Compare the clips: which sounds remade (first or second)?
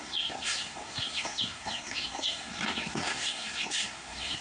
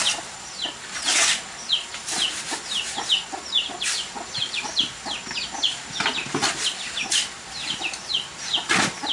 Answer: first